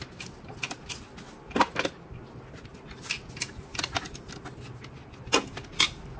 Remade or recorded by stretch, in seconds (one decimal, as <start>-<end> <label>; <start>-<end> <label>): 0.0-6.2 recorded

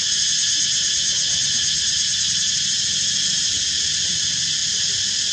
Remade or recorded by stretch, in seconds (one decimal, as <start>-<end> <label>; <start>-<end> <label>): 0.0-5.3 recorded

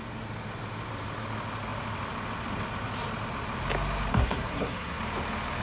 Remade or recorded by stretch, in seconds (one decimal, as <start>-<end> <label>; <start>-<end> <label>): 0.0-4.1 recorded; 4.1-5.0 remade; 5.0-5.6 recorded

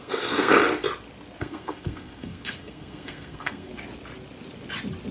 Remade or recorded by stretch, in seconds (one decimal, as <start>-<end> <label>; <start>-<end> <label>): 0.0-0.6 remade; 0.6-1.4 recorded; 1.4-3.7 remade; 3.7-5.1 recorded

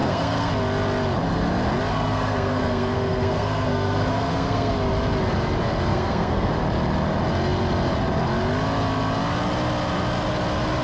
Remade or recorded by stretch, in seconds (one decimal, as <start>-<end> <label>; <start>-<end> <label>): 0.0-0.5 remade; 0.5-1.9 recorded; 1.9-4.7 remade; 4.7-5.9 recorded; 5.9-6.5 remade; 6.5-10.8 recorded

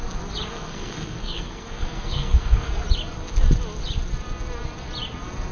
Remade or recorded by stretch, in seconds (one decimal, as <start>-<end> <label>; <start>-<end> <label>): 0.0-0.5 recorded; 0.5-2.7 remade; 2.7-5.5 recorded

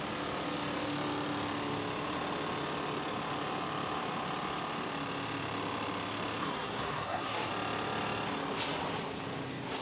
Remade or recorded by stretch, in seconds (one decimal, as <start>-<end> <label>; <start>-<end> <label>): 0.0-6.4 recorded; 6.4-7.5 remade; 7.5-9.8 recorded